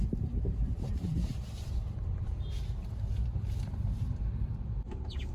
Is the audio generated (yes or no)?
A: yes